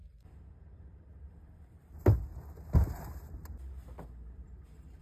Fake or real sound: real